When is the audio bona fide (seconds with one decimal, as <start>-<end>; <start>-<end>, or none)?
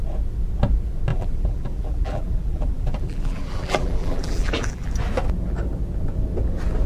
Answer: 0.0-1.1; 4.9-6.9